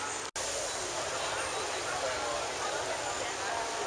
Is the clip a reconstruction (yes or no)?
no